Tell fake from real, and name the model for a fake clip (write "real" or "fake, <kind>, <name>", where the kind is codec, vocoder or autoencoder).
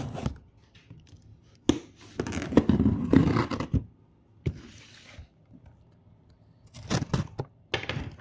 real